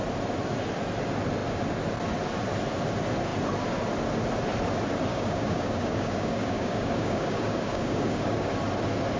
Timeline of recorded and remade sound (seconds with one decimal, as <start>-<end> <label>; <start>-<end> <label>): 0.0-5.1 recorded; 5.1-8.5 remade; 8.5-9.2 recorded